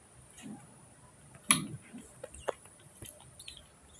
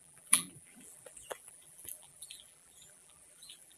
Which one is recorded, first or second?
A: first